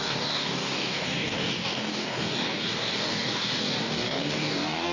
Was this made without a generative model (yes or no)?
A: no